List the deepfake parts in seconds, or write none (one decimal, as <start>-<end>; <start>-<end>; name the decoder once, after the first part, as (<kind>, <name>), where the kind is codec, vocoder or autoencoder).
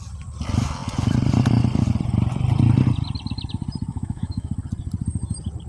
3.9-4.5 (autoencoder, DAC-VAE)